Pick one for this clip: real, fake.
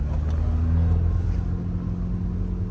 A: real